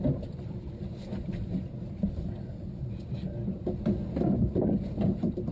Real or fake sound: real